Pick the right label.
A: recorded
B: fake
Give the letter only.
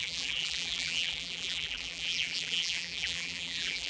B